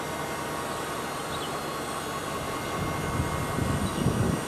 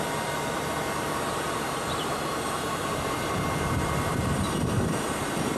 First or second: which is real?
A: first